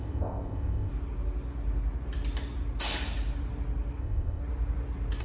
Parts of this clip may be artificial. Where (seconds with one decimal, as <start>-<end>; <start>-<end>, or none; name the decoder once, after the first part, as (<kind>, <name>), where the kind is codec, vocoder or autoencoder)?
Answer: 0.0-0.9 (codec, ZipCodec); 4.0-4.4